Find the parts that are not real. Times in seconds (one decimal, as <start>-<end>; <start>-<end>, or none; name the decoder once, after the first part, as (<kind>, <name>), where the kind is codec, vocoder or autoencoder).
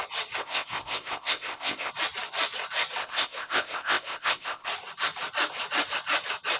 0.4-1.9 (codec, ZipCodec); 3.0-4.7